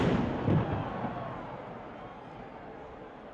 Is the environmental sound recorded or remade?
recorded